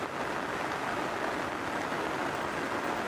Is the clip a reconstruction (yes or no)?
no